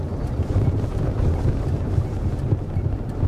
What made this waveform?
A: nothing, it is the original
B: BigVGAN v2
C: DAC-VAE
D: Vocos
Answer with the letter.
B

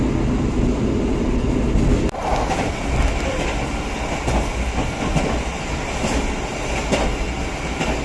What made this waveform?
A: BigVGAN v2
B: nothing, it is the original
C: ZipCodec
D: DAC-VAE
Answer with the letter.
B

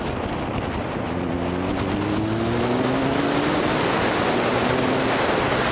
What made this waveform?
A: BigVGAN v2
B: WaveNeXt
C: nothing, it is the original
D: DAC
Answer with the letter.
C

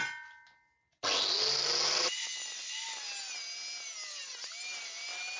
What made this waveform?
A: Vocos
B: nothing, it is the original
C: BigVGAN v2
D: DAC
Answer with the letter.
B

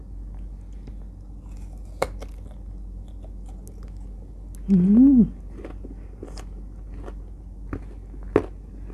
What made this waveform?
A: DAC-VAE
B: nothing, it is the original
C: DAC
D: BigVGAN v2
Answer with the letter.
B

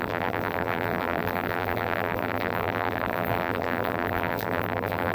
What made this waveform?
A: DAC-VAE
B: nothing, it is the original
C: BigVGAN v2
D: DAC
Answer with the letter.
C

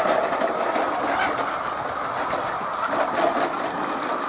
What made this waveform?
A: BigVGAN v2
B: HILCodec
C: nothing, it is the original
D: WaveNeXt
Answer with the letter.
C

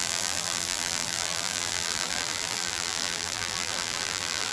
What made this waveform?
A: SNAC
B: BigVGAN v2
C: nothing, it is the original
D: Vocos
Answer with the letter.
B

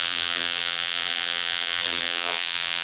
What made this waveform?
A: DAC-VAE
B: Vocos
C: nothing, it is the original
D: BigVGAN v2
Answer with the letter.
D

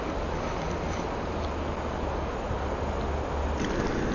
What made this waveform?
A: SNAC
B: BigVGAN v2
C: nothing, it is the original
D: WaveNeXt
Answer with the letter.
C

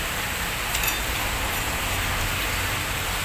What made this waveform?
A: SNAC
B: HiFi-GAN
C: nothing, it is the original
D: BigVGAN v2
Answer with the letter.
C